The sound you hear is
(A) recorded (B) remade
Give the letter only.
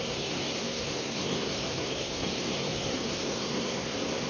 B